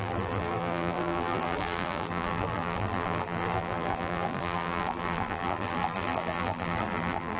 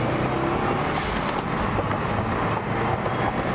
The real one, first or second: second